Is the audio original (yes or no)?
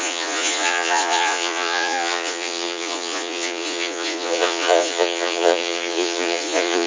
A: no